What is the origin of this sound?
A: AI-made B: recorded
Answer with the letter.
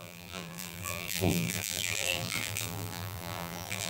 A